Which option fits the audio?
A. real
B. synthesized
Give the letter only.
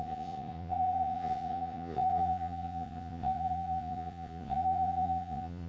B